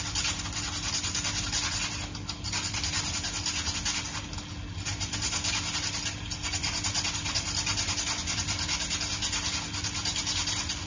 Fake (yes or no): no